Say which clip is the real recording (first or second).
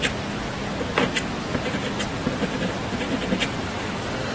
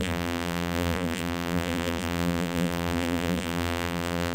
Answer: first